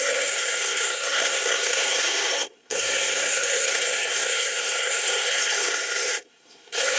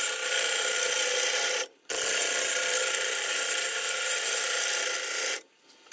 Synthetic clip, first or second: first